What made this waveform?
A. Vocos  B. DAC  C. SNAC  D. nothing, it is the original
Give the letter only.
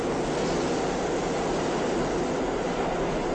D